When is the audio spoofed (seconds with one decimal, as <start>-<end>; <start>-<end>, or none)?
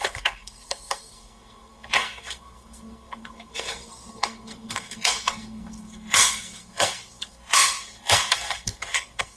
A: 0.0-9.4